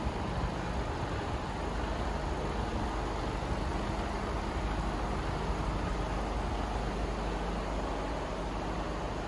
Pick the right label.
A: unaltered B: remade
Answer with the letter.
A